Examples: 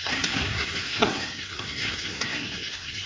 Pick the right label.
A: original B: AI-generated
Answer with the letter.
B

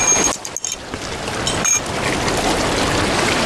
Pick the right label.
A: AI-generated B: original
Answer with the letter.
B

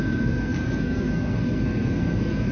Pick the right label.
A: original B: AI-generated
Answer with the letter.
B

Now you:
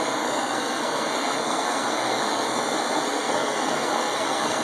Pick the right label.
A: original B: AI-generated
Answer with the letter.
B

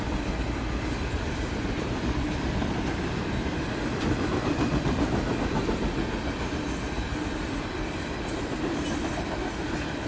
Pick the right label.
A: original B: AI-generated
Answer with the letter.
A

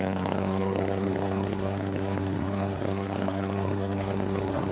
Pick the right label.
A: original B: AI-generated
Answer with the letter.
B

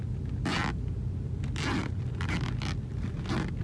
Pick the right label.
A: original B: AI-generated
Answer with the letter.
A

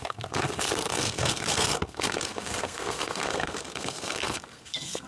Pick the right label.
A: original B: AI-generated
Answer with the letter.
B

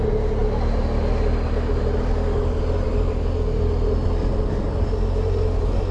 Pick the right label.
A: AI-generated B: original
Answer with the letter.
B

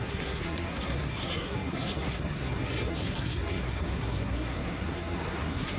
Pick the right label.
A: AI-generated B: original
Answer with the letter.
A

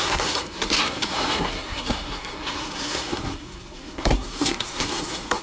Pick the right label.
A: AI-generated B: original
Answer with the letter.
A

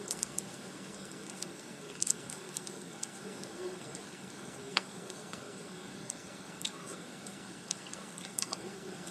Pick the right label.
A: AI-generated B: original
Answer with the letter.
A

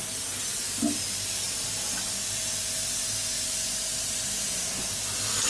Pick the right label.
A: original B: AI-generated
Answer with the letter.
A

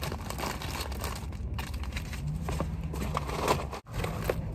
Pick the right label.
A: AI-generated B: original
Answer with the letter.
B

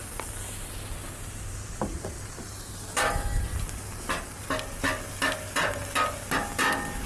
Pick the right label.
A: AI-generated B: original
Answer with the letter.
B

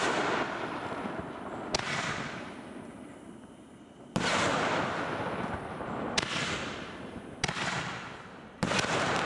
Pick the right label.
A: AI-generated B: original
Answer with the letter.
B